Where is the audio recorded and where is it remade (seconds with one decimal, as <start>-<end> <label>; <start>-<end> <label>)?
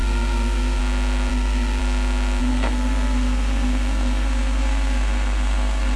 0.0-0.8 remade; 0.8-1.3 recorded; 1.3-1.8 remade; 1.8-2.4 recorded; 2.4-6.0 remade